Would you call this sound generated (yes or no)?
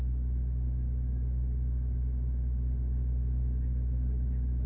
no